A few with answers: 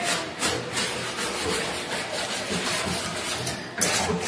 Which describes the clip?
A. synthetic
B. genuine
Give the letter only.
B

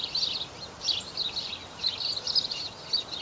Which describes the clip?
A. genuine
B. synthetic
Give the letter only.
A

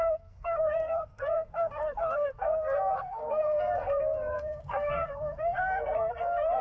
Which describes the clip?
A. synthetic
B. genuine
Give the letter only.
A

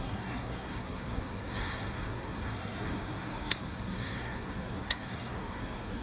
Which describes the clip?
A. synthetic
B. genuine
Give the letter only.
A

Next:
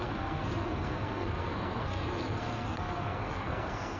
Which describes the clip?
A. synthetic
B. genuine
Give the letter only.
A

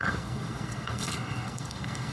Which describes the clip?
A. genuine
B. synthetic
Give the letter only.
B